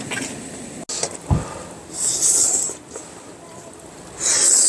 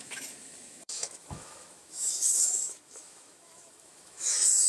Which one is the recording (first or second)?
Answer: first